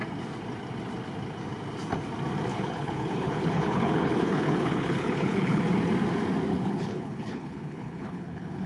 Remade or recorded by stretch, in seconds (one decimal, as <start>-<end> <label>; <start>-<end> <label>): 0.0-2.5 recorded; 2.5-5.6 remade; 5.6-6.5 recorded; 6.5-8.7 remade